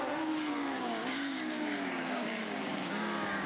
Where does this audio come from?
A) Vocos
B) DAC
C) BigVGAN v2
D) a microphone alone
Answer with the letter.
B